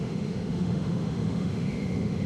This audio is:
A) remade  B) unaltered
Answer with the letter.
A